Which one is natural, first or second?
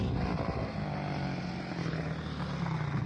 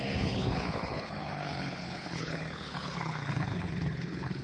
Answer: first